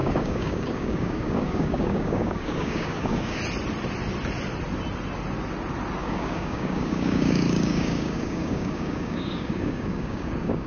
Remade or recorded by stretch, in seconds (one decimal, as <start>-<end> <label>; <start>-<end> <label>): 0.0-3.4 remade; 3.4-6.0 recorded; 6.0-10.7 remade